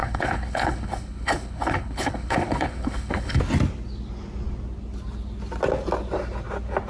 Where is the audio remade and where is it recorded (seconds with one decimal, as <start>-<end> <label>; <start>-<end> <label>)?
0.0-3.4 remade; 3.4-6.9 recorded